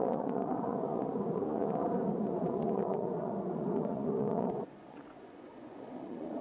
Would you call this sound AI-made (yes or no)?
yes